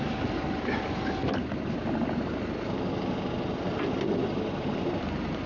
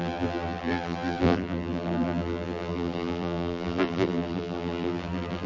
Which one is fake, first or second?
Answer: second